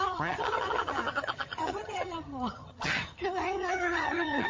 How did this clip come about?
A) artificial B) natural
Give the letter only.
A